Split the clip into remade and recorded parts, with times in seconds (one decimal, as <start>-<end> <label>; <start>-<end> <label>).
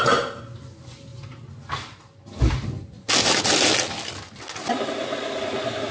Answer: 0.0-5.9 recorded